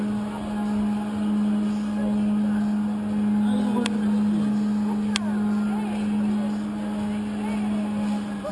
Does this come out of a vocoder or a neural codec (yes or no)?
no